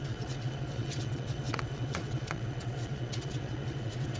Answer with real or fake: fake